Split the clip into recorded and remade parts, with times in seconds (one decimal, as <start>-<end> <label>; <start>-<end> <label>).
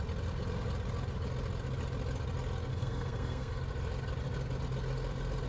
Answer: 0.0-2.7 recorded; 2.7-3.6 remade; 3.6-5.5 recorded